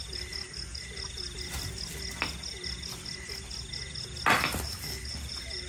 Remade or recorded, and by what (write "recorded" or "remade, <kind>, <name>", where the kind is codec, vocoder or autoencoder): recorded